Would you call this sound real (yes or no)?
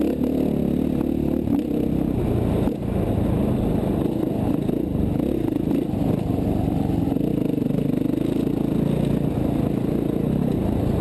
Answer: yes